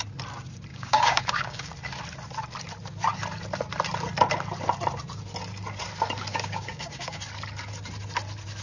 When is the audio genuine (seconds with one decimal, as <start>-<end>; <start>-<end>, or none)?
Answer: 0.0-0.7; 1.7-6.3; 7.2-8.6